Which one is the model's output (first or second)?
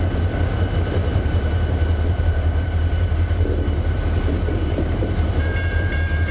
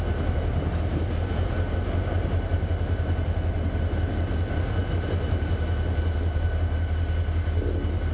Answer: first